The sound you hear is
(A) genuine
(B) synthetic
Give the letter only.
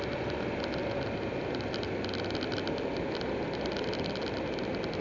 A